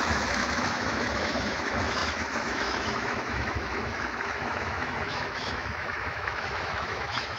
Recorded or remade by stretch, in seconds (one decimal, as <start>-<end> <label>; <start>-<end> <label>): 0.0-7.4 remade